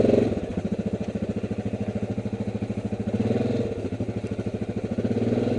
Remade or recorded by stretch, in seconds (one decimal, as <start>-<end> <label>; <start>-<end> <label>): 0.0-5.6 recorded